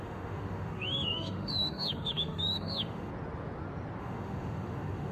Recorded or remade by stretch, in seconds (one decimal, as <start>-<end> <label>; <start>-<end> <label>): 0.0-3.1 remade; 3.1-4.0 recorded; 4.0-5.1 remade